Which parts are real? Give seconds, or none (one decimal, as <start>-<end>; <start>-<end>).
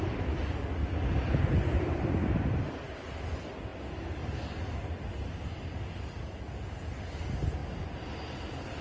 0.0-8.8